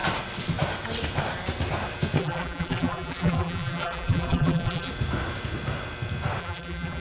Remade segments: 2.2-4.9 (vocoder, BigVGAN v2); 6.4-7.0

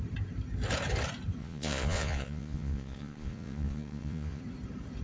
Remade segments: 1.4-4.4 (vocoder, Vocos)

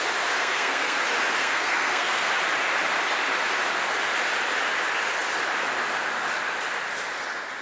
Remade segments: 0.4-1.0 (codec, SNAC); 1.4-2.3

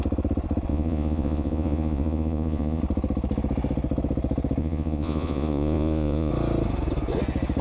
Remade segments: 0.7-2.8 (vocoder, Vocos); 4.6-6.3

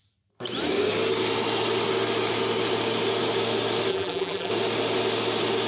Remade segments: 3.9-4.5 (vocoder, BigVGAN v2)

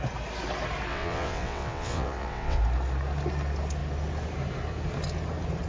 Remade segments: 0.9-2.6 (vocoder, WaveNeXt)

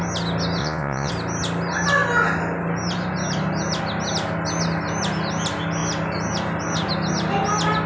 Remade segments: 0.6-1.1 (vocoder, Vocos)